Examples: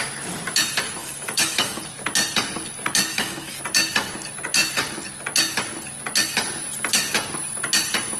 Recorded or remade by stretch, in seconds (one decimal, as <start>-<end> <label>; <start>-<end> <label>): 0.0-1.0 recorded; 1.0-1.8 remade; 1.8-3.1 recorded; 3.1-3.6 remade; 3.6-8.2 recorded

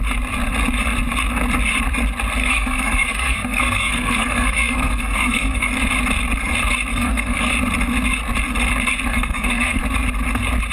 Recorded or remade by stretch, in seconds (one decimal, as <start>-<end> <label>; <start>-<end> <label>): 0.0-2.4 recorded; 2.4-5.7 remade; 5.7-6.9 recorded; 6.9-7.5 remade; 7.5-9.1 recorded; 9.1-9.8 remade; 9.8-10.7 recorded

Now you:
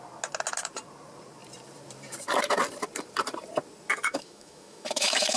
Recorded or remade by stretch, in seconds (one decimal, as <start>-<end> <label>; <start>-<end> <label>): 0.0-3.9 recorded; 3.9-5.4 remade

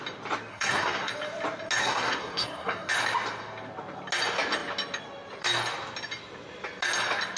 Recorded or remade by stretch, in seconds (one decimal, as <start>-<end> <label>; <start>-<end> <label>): 0.0-0.5 recorded; 0.5-1.1 remade; 1.1-1.8 recorded; 1.8-2.9 remade; 2.9-7.4 recorded

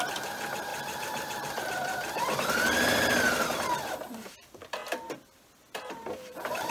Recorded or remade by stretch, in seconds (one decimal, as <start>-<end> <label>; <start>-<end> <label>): 0.0-4.8 remade; 4.8-5.8 recorded; 5.8-6.7 remade

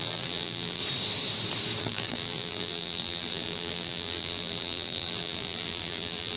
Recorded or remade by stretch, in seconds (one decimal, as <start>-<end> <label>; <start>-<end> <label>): 0.0-0.8 remade; 0.8-1.8 recorded; 1.8-6.4 remade